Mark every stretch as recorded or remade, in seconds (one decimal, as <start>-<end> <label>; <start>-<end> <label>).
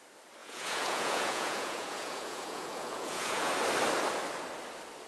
0.0-0.4 recorded; 0.4-3.5 remade; 3.5-5.1 recorded